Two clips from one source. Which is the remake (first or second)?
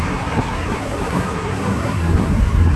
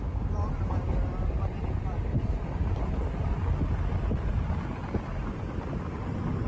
first